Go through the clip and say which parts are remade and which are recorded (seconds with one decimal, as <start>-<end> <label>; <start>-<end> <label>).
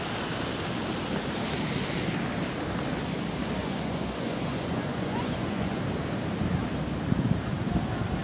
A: 0.0-3.6 recorded; 3.6-5.8 remade; 5.8-8.2 recorded